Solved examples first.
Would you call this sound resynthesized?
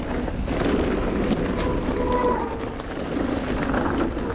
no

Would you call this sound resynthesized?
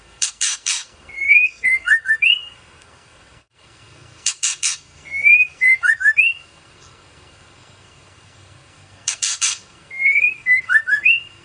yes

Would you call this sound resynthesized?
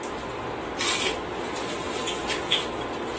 no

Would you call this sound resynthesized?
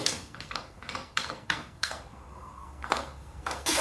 yes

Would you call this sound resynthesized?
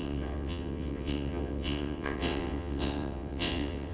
yes